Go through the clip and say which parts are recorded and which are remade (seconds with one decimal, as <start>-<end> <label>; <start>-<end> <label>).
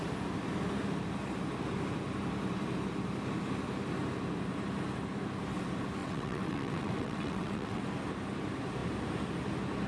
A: 0.0-6.0 recorded; 6.0-7.8 remade; 7.8-9.9 recorded